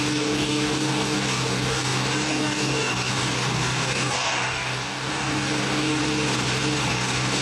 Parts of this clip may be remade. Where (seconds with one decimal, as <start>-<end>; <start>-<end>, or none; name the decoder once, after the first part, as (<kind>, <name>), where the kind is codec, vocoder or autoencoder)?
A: 0.0-6.0 (codec, DAC); 6.8-7.4